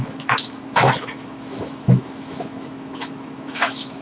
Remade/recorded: remade